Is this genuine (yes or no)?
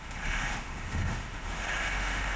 no